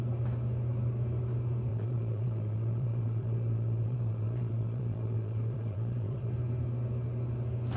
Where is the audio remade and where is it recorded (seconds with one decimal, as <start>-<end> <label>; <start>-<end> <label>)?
0.0-1.7 recorded; 1.7-6.3 remade; 6.3-7.8 recorded